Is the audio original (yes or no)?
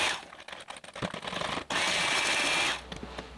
yes